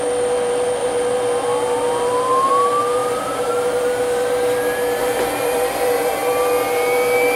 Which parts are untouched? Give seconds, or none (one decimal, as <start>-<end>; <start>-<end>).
0.0-3.0; 3.5-5.0; 6.1-7.4